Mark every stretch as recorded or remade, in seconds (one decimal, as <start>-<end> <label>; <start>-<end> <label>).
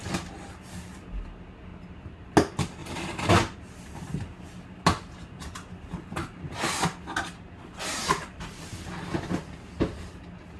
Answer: 0.0-1.7 recorded; 1.7-2.3 remade; 2.3-2.8 recorded; 2.8-3.7 remade; 3.7-7.9 recorded; 7.9-8.5 remade; 8.5-10.6 recorded